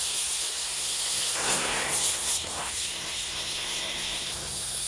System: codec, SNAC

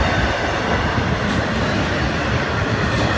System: none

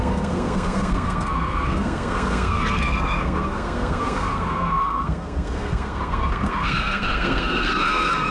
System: codec, SNAC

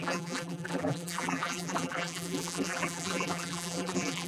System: vocoder, BigVGAN v2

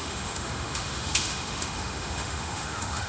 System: autoencoder, DAC-VAE